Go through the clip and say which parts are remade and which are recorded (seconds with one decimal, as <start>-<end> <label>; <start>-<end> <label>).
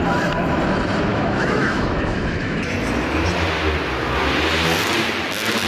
0.0-1.1 recorded; 1.1-2.6 remade; 2.6-5.7 recorded